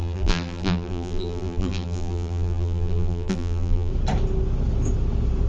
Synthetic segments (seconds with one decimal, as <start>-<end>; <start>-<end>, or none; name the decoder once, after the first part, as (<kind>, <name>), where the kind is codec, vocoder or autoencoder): 0.0-3.9 (vocoder, BigVGAN v2)